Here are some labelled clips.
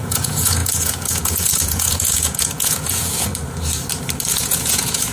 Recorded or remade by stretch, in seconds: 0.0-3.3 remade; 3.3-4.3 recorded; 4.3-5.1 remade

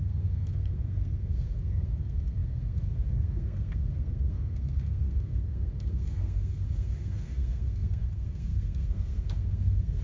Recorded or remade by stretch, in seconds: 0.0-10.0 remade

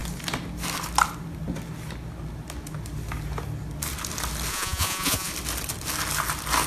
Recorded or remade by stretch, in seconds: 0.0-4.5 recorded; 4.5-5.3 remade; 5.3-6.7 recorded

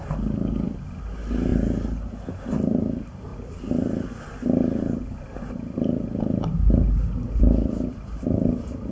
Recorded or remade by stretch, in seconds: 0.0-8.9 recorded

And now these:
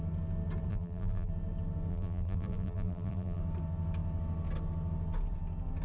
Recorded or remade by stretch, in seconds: 0.0-0.7 recorded; 0.7-1.3 remade; 1.3-1.9 recorded; 1.9-3.4 remade; 3.4-5.8 recorded

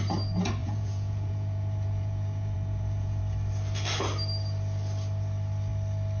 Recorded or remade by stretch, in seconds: 0.0-0.6 recorded; 0.6-3.2 remade; 3.2-6.2 recorded